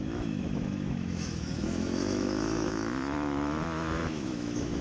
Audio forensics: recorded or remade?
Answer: remade